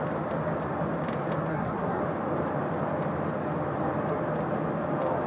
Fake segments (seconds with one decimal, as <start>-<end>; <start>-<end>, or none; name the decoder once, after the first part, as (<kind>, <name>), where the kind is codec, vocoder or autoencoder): 1.5-2.0 (codec, SNAC)